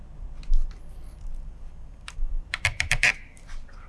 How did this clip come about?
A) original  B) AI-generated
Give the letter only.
B